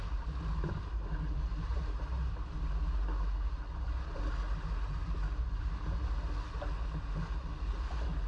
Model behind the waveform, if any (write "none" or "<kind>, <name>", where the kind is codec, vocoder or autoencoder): none